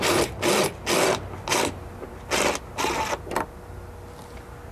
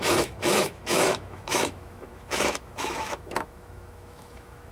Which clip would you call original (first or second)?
first